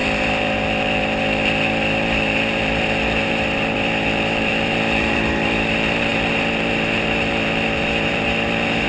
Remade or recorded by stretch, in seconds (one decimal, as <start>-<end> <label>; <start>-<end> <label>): 0.0-8.9 remade